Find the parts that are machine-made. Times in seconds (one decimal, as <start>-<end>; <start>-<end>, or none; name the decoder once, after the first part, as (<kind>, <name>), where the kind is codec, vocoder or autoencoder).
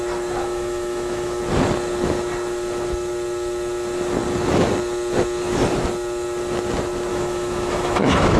0.4-1.4 (autoencoder, DAC-VAE); 7.1-8.4